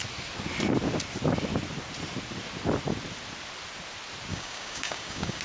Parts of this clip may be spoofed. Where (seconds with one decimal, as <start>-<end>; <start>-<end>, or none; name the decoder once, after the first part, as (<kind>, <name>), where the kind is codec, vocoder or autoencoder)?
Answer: 4.3-5.4 (codec, DAC)

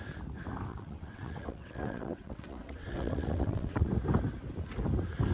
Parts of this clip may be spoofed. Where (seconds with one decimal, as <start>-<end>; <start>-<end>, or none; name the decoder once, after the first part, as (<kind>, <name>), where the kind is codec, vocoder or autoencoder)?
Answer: 0.7-3.9 (vocoder, WaveNeXt)

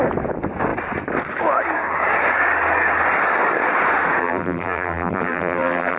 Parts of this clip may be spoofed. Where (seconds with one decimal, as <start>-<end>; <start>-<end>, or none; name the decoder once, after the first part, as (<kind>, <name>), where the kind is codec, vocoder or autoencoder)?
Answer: 4.2-6.0 (vocoder, BigVGAN v2)

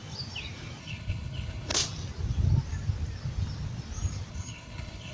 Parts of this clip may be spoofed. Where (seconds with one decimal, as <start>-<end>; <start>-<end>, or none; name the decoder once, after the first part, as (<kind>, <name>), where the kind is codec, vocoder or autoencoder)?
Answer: 0.8-1.7 (codec, HILCodec); 4.3-5.1